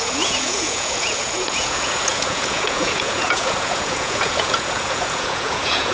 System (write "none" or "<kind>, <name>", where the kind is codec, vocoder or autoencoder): vocoder, Vocos